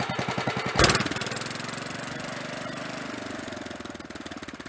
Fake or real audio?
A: real